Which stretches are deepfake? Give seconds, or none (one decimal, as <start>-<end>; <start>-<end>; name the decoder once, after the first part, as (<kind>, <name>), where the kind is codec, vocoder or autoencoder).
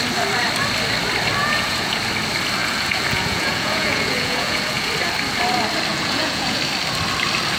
1.4-2.0 (vocoder, Vocos); 2.6-4.9; 5.9-6.6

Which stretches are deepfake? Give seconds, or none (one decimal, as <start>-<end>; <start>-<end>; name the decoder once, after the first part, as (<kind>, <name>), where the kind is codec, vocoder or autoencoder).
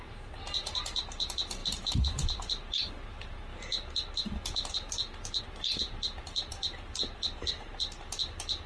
none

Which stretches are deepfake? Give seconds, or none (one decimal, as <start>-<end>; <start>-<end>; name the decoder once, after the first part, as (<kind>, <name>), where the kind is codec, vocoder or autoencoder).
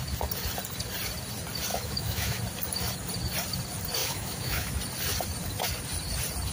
1.7-2.4 (autoencoder, DAC-VAE); 4.0-4.7